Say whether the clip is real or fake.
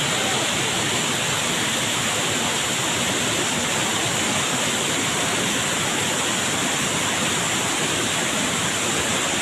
real